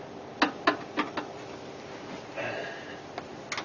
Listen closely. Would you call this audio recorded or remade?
recorded